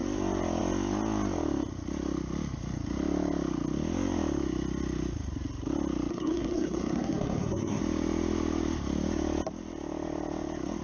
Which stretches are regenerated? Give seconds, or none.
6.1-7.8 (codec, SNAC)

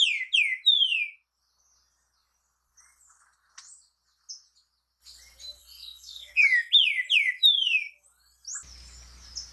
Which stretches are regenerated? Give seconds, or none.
5.6-6.3 (codec, SNAC)

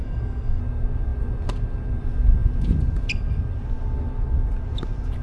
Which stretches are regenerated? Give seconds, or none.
0.0-0.6 (codec, SNAC)

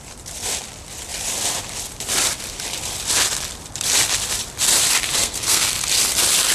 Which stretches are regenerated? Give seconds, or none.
5.2-5.7 (codec, SNAC)